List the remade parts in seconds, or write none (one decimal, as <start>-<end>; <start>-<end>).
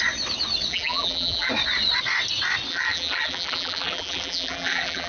0.7-1.5; 2.7-5.1